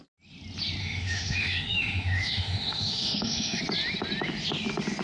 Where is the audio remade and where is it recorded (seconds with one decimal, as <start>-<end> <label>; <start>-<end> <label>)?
0.0-0.8 recorded; 0.8-3.6 remade; 3.6-5.0 recorded